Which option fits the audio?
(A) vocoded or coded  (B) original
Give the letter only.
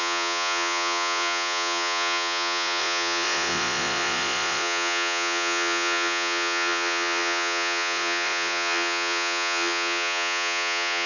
A